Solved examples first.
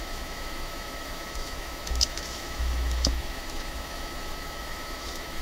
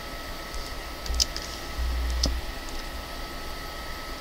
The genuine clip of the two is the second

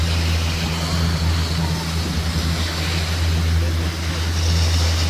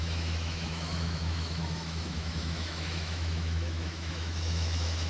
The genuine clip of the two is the first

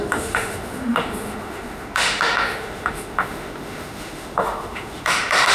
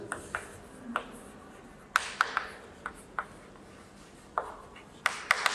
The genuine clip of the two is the second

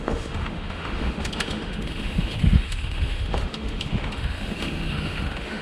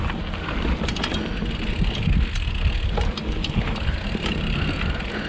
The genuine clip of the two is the second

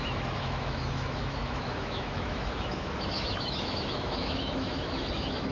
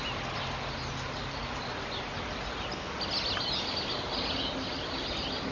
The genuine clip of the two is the second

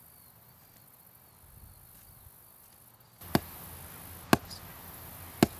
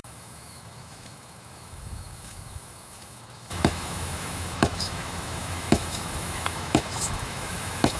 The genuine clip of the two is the first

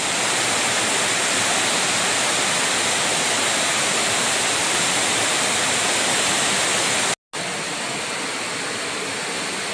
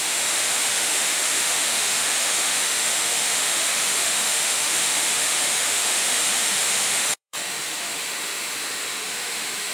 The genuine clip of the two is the first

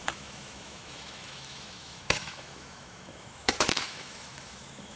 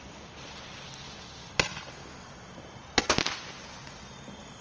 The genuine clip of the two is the second